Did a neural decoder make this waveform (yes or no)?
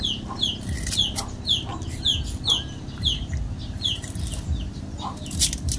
no